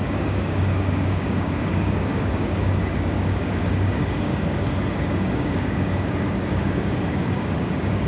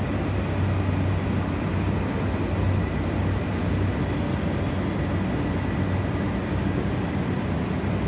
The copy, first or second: first